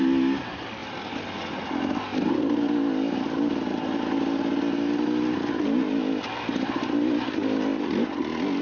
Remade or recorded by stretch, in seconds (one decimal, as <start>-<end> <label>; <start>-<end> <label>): 0.0-8.6 recorded